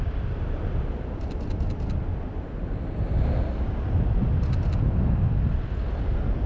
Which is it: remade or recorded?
recorded